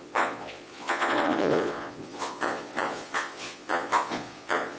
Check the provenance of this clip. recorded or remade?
remade